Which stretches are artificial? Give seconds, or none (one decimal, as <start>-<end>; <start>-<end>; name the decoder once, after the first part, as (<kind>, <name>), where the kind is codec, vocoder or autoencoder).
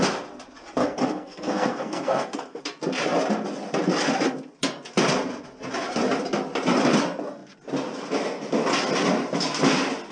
0.8-2.6 (codec, SNAC)